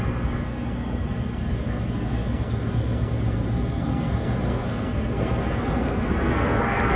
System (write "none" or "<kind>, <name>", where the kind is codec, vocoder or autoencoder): codec, SNAC